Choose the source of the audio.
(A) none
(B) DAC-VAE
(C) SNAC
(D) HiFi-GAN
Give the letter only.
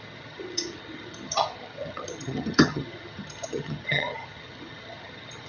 D